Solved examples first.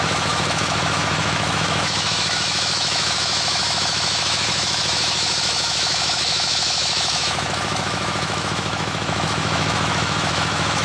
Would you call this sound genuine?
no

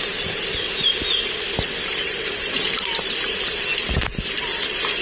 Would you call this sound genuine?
yes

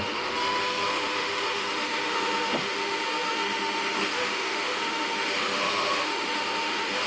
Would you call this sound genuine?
no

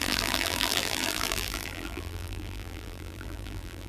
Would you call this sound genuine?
no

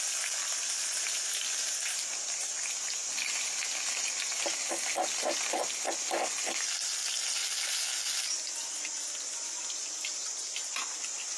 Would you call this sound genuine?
yes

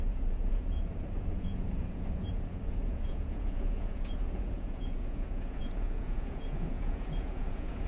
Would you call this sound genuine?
no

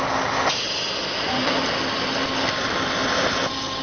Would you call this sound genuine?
yes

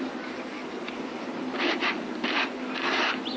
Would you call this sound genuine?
yes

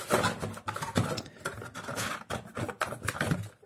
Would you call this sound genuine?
yes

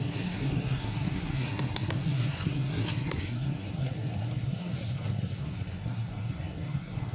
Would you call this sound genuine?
no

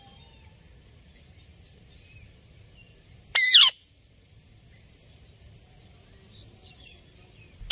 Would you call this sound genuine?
yes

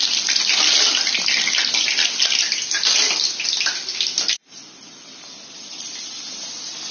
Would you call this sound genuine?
yes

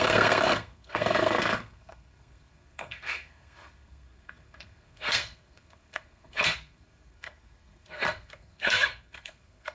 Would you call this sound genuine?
no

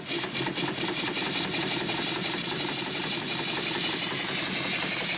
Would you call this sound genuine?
yes